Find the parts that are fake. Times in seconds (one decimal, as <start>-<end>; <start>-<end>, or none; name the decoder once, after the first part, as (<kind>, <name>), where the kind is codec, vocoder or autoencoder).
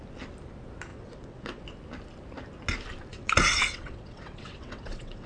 0.9-1.6 (vocoder, WaveNeXt); 3.1-5.3